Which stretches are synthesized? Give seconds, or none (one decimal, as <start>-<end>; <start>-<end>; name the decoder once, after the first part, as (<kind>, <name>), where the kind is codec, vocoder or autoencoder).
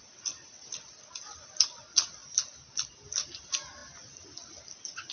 none